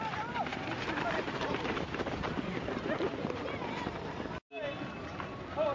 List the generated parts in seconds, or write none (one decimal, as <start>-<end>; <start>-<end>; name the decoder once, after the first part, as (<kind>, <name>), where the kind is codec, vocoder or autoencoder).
0.5-3.9 (vocoder, BigVGAN v2)

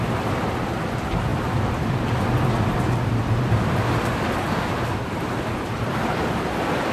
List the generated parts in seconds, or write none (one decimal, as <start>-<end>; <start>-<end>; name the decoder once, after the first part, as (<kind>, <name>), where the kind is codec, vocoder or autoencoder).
none

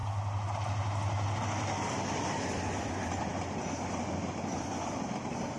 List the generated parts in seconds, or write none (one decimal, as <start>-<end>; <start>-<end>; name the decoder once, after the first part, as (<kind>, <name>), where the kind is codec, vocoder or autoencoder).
1.4-3.3 (vocoder, BigVGAN v2); 3.9-5.6

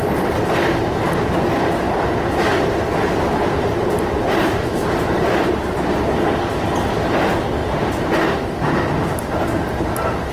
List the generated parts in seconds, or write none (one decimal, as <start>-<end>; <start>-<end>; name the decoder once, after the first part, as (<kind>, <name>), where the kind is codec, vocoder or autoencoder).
3.8-5.7 (vocoder, BigVGAN v2); 7.6-8.3

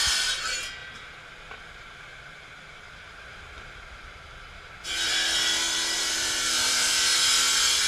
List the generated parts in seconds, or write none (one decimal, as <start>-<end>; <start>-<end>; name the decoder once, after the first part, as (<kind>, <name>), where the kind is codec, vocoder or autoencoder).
0.8-4.7 (vocoder, BigVGAN v2); 6.0-7.2

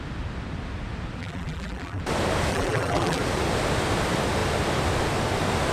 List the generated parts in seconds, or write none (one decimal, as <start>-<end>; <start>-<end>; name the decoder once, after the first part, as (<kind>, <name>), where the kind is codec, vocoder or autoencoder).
1.2-2.0 (vocoder, BigVGAN v2); 2.5-3.2

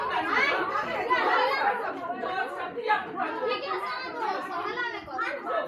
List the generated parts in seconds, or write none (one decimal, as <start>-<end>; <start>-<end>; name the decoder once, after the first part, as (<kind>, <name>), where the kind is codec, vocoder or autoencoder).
0.0-3.0 (vocoder, BigVGAN v2); 4.1-5.7

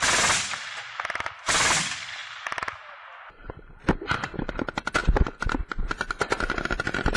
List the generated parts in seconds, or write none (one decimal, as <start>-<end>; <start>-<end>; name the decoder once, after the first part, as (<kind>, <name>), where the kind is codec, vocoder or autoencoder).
2.2-3.7 (vocoder, BigVGAN v2)